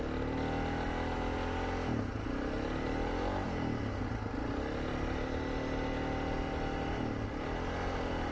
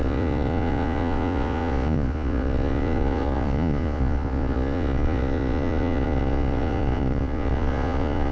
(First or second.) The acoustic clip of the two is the first